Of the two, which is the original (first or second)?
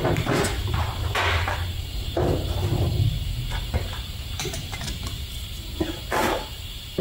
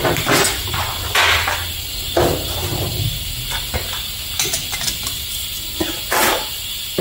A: second